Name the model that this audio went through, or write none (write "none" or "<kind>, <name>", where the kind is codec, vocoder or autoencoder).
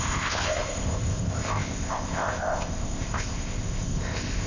codec, ZipCodec